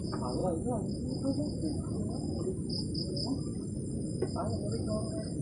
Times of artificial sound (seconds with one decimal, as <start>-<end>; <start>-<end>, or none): none